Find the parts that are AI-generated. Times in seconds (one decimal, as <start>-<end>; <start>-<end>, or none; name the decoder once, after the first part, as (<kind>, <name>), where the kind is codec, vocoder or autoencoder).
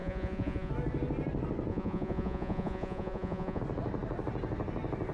0.0-0.7 (vocoder, Vocos); 1.7-3.6